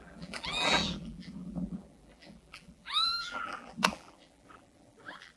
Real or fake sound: fake